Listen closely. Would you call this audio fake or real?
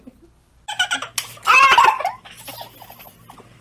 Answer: real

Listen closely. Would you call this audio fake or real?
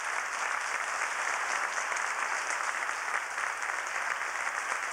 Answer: real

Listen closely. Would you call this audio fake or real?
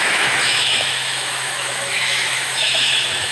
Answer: fake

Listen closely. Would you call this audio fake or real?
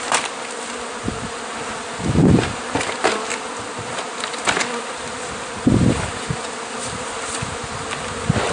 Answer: real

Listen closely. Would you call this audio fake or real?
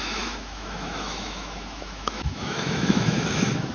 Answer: fake